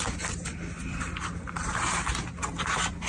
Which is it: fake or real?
real